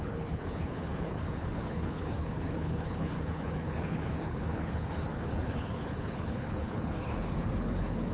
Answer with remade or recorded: remade